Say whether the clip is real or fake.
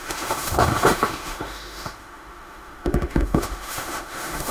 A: fake